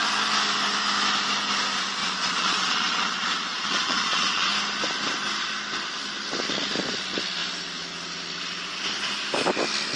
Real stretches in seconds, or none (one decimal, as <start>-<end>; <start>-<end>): 0.0-2.0; 4.5-10.0

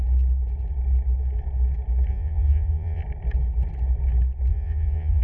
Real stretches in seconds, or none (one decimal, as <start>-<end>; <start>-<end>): 0.0-2.1; 3.0-4.5

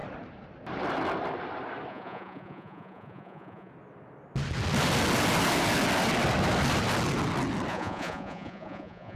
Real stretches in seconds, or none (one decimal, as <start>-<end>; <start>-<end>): 0.0-1.9; 3.7-7.7

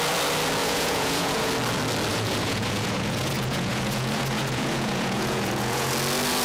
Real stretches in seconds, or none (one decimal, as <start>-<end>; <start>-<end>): 0.0-0.6; 1.5-2.1; 5.9-6.4

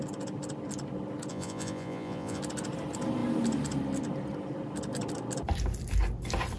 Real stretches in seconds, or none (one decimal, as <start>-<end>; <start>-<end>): 0.0-1.3; 2.4-6.6

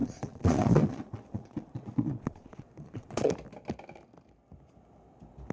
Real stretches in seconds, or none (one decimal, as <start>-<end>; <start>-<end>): 3.3-5.5